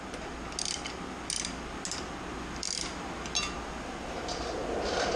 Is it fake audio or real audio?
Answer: real